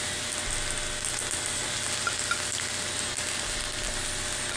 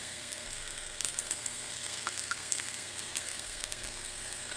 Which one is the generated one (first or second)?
second